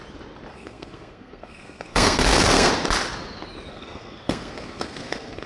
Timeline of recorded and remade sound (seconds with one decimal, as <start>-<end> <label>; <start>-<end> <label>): 0.0-0.5 recorded; 0.5-2.7 remade; 2.7-3.7 recorded; 3.7-5.5 remade